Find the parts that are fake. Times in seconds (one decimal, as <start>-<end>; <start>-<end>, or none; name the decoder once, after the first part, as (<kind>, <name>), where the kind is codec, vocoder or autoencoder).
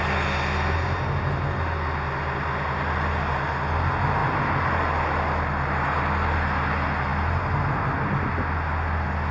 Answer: none